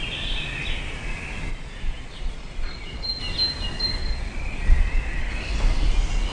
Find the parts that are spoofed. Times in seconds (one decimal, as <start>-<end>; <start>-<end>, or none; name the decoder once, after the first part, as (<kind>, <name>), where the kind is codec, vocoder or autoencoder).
1.5-3.2 (vocoder, Vocos); 4.0-5.3

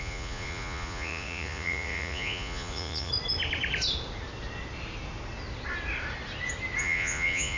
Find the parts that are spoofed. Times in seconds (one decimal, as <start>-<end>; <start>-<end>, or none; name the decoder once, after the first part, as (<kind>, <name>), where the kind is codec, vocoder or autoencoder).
0.0-3.1 (vocoder, Vocos); 6.8-7.6

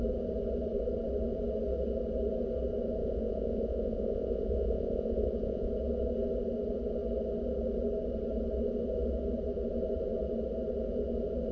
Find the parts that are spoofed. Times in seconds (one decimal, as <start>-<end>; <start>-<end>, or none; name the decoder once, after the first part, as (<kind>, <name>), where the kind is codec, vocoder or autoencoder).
3.0-5.7 (vocoder, Vocos)

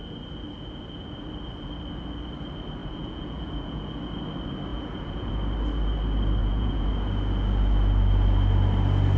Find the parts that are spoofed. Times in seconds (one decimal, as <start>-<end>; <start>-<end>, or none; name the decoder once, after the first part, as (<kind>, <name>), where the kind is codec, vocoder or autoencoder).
2.8-3.8 (vocoder, Vocos); 4.7-5.3; 6.4-6.9

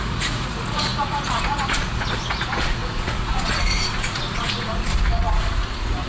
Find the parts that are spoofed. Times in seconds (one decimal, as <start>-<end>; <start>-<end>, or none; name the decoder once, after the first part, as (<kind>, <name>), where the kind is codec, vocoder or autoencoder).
0.0-6.1 (vocoder, Vocos)

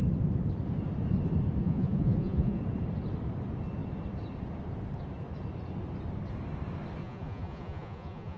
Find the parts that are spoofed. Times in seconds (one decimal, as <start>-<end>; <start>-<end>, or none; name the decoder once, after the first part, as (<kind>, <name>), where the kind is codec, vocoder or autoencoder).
1.6-2.6 (vocoder, Vocos); 7.0-8.4

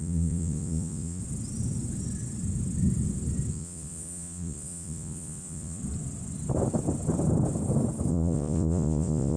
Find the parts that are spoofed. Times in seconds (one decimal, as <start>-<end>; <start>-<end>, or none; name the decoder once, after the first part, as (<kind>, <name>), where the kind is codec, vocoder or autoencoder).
0.0-1.2 (vocoder, Vocos); 3.5-5.8; 8.1-9.4